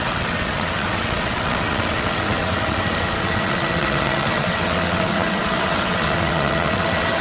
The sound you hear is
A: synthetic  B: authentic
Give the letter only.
A